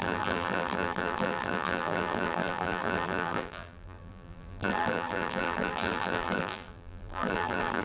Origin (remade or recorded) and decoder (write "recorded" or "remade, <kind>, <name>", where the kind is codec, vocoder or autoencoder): remade, vocoder, BigVGAN v2